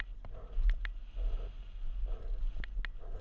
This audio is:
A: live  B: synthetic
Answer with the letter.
A